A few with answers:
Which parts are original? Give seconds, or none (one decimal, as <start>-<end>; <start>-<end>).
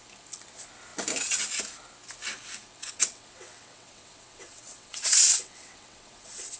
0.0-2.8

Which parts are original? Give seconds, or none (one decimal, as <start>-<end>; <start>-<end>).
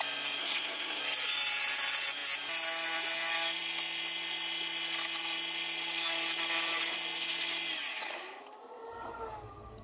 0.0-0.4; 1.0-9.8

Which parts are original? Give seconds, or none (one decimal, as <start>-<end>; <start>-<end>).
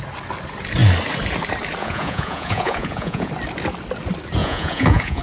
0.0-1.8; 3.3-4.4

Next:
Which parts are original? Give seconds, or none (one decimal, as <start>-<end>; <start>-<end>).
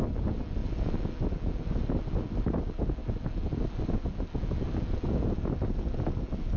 0.0-6.6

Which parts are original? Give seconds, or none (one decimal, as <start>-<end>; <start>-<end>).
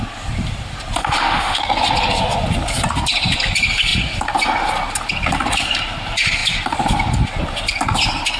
0.0-1.0; 1.6-8.4